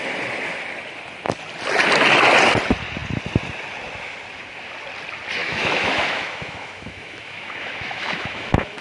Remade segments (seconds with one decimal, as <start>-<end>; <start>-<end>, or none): 5.4-8.8